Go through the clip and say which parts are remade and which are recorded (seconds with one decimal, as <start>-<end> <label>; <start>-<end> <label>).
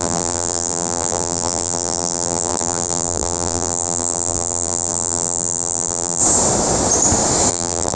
0.0-6.2 remade; 6.2-7.5 recorded; 7.5-7.9 remade